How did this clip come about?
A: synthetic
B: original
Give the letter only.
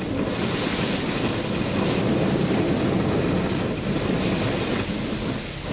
B